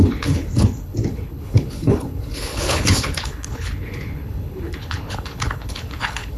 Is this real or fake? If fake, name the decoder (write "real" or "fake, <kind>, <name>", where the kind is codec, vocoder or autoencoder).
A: fake, codec, HILCodec